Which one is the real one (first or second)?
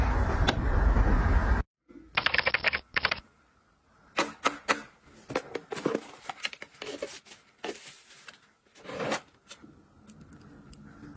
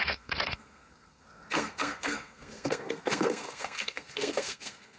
first